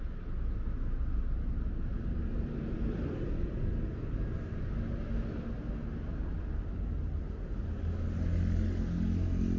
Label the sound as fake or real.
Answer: real